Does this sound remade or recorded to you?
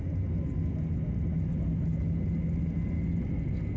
recorded